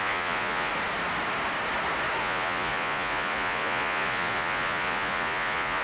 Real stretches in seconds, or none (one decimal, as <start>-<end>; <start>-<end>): 0.7-2.2